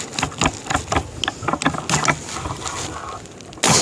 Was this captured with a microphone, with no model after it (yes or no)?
yes